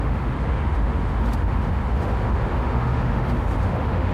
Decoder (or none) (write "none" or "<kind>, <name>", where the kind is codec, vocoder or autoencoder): autoencoder, DAC-VAE